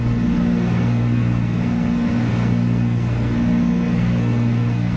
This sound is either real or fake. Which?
fake